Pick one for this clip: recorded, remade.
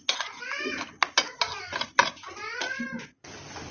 recorded